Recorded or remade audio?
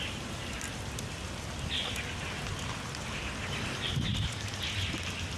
recorded